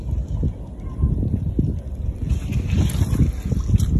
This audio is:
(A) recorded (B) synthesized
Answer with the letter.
A